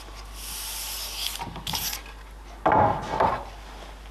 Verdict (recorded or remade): recorded